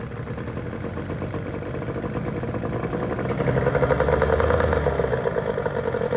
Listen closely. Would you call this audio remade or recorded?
recorded